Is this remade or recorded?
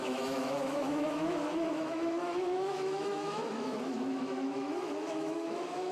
remade